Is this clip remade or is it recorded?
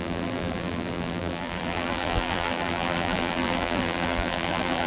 remade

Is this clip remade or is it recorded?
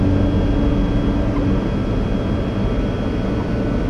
recorded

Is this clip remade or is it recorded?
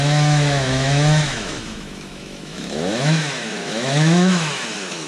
remade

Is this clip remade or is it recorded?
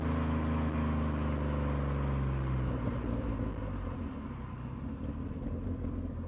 recorded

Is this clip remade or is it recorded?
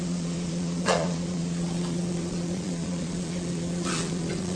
remade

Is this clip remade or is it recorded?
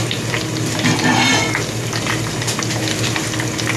recorded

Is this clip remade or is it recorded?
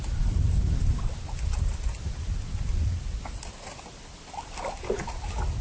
recorded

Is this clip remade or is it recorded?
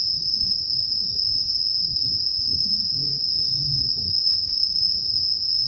remade